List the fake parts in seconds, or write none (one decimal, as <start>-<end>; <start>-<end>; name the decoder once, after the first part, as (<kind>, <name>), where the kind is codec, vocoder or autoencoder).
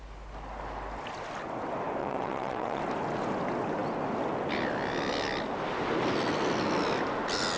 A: 2.0-2.8 (vocoder, WaveNeXt)